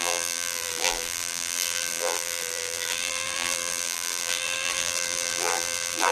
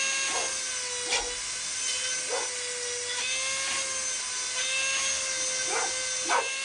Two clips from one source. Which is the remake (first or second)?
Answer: first